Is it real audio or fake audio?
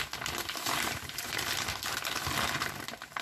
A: real